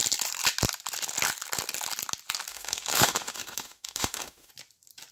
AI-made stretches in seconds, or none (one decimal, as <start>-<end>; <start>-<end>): 2.5-4.5